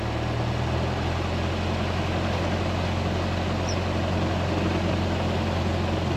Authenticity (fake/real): real